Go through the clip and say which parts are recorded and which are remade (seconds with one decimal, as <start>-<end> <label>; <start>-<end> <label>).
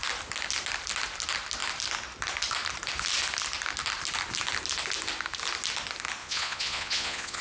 0.0-6.2 recorded; 6.2-7.4 remade